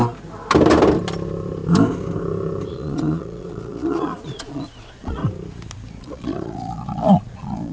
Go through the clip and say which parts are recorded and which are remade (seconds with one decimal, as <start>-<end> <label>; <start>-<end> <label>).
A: 0.0-2.7 recorded; 2.7-5.2 remade; 5.2-6.0 recorded; 6.0-7.7 remade